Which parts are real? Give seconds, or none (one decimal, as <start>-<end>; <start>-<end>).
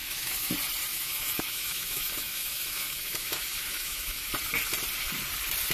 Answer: 0.5-0.9; 4.3-5.7